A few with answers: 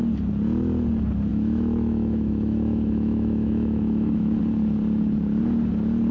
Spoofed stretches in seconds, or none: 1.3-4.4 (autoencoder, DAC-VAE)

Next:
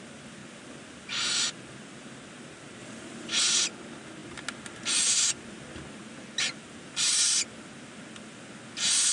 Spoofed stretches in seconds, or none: 2.8-3.4 (vocoder, BigVGAN v2)

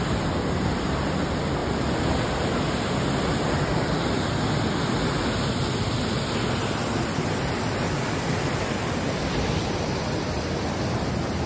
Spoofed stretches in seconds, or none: none

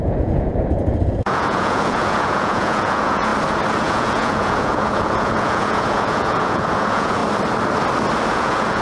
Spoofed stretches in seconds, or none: 0.0-3.3 (vocoder, Vocos); 3.8-7.2; 8.3-8.8